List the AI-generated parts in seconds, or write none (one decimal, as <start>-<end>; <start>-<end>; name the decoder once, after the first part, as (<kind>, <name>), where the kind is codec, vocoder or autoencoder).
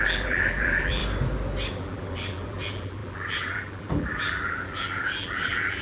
0.0-1.0 (vocoder, BigVGAN v2); 1.7-5.8